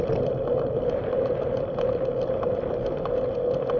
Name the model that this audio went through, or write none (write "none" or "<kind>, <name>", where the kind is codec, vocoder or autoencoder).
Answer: none